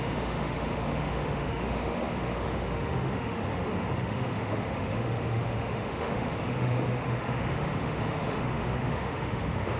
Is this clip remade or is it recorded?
remade